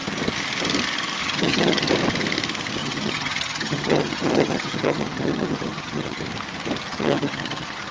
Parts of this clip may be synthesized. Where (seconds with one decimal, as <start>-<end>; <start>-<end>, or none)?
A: 1.2-1.9; 2.8-6.2; 6.9-7.9